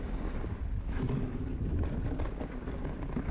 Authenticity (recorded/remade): recorded